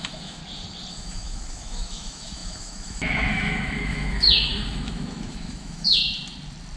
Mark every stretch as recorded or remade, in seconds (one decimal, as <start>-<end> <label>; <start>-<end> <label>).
0.0-0.4 remade; 0.4-0.9 recorded; 0.9-6.0 remade; 6.0-6.8 recorded